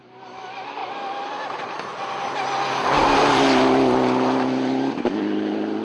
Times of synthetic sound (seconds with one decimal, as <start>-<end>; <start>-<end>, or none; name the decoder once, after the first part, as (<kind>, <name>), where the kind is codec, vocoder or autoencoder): 0.8-1.3 (vocoder, BigVGAN v2)